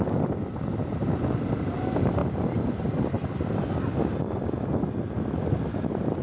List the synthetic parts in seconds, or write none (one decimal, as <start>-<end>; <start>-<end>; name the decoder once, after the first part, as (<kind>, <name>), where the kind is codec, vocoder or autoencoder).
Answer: none